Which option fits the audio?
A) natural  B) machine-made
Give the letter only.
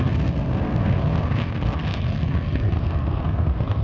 B